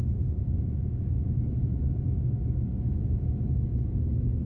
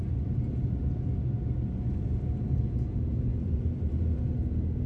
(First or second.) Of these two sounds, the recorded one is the second